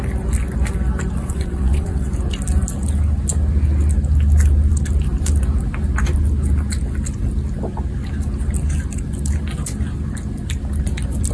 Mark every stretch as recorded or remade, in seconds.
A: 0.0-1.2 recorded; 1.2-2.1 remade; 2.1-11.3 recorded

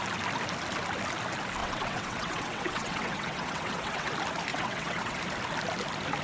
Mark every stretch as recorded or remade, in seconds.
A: 0.0-1.6 recorded; 1.6-4.1 remade; 4.1-4.5 recorded; 4.5-5.2 remade; 5.2-6.2 recorded

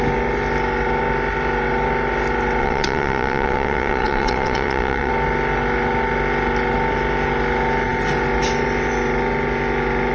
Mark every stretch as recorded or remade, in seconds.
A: 0.0-2.6 recorded; 2.6-5.1 remade; 5.1-10.1 recorded

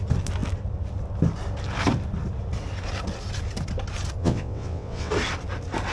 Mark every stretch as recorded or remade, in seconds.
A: 0.0-4.2 recorded; 4.2-5.1 remade; 5.1-5.9 recorded